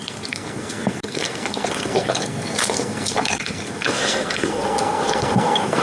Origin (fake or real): fake